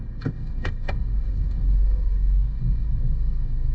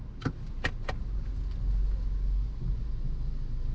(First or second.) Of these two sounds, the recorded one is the second